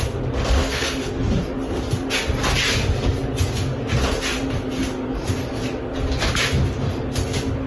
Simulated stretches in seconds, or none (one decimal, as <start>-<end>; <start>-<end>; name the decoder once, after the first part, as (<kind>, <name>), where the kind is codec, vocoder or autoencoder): 0.6-1.1 (codec, SNAC)